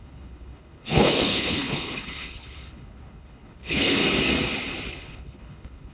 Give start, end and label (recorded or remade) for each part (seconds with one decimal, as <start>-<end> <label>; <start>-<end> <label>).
0.0-4.0 remade; 4.0-4.9 recorded; 4.9-5.9 remade